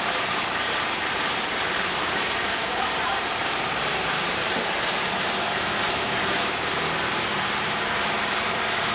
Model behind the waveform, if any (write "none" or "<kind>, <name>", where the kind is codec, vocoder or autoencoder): vocoder, BigVGAN v2